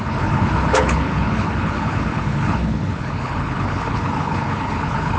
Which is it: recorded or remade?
remade